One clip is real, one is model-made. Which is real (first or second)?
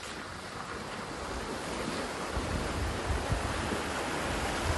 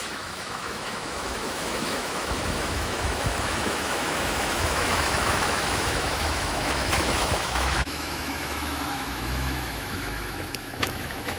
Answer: first